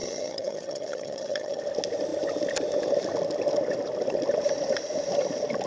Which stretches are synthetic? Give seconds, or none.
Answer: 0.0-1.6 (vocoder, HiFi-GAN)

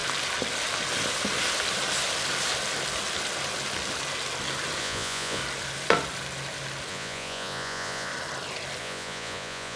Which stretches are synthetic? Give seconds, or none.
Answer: 4.8-5.4 (vocoder, Vocos); 6.9-8.1; 8.8-9.8

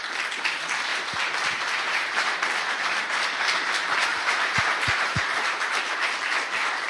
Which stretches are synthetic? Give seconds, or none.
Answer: 0.9-2.7 (vocoder, BigVGAN v2); 4.1-5.9

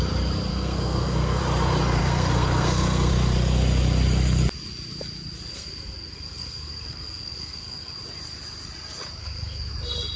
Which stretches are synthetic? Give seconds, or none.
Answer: 0.5-1.4 (codec, SNAC); 2.0-3.1; 5.5-7.9; 9.2-9.7

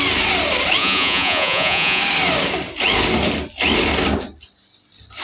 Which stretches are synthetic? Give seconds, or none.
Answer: 0.8-2.0 (vocoder, Vocos)

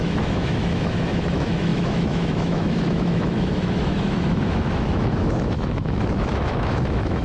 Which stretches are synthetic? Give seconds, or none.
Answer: 0.0-7.2 (autoencoder, DAC-VAE)